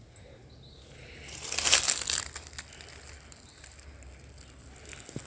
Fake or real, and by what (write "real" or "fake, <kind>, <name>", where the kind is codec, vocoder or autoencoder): real